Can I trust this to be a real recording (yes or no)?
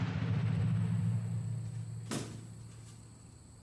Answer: yes